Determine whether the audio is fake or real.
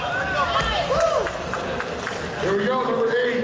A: real